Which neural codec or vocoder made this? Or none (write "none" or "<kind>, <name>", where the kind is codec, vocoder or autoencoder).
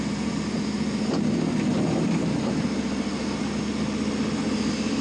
none